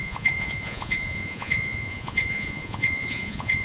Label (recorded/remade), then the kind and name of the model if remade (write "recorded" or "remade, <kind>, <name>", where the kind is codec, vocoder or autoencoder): remade, vocoder, Vocos